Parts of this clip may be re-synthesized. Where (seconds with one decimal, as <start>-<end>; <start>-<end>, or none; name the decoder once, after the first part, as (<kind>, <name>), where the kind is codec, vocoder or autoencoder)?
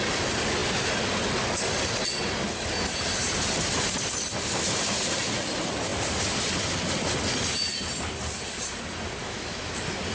9.2-9.7 (autoencoder, DAC-VAE)